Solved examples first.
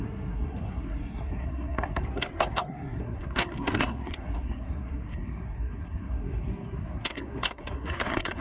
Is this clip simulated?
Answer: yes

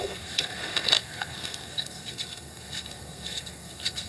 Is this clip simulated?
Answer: yes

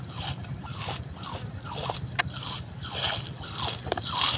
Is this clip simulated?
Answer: no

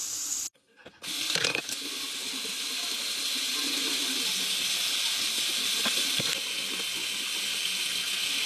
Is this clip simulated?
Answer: no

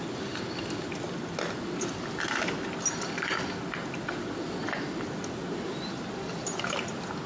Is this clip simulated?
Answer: no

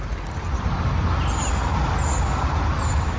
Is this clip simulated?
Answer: no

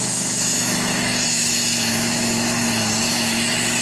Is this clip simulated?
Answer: yes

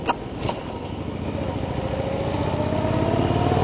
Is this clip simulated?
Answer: no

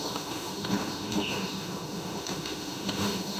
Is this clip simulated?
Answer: yes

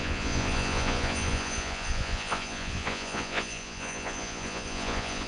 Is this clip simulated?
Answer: yes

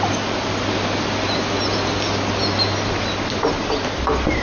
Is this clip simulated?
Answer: no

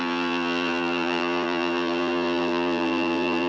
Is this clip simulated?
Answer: yes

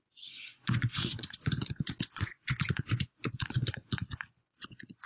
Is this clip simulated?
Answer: yes